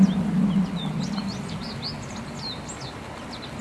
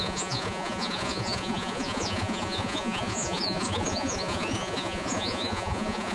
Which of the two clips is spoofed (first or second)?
second